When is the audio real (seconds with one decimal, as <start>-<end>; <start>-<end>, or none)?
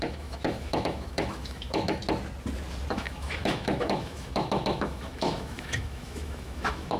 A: 2.0-2.9